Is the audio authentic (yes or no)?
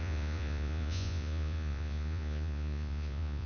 no